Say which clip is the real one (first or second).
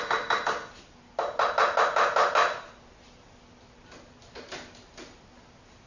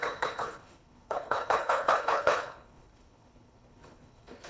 first